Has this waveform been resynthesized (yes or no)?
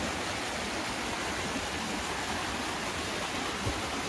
no